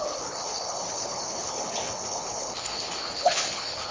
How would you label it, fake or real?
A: fake